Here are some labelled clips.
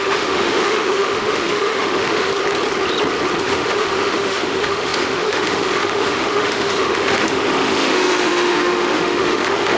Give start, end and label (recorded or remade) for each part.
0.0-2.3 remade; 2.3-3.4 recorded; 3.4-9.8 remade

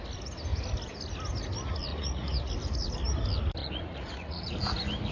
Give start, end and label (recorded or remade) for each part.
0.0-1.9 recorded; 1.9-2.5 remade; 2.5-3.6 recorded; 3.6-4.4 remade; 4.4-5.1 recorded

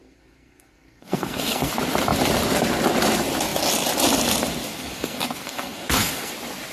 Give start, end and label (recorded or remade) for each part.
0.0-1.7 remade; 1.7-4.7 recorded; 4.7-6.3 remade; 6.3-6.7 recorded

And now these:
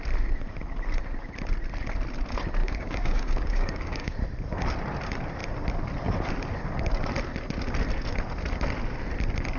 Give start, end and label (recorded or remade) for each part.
0.0-2.6 recorded; 2.6-4.2 remade; 4.2-9.6 recorded

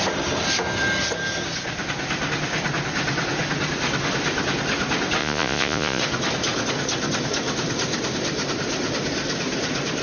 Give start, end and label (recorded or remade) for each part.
0.0-5.2 recorded; 5.2-6.0 remade; 6.0-10.0 recorded

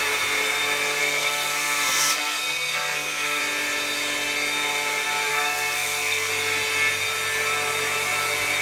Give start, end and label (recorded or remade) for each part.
0.0-1.0 recorded; 1.0-3.4 remade; 3.4-5.3 recorded; 5.3-6.3 remade; 6.3-8.6 recorded

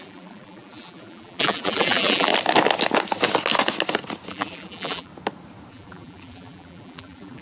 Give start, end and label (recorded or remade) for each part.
0.0-2.3 remade; 2.3-4.3 recorded; 4.3-5.1 remade; 5.1-5.7 recorded; 5.7-7.4 remade

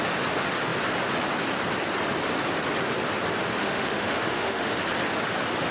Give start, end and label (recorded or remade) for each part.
0.0-3.6 recorded; 3.6-4.8 remade; 4.8-5.7 recorded